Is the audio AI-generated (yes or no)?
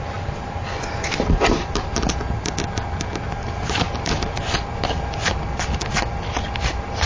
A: no